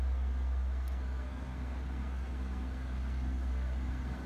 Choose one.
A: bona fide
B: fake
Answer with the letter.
B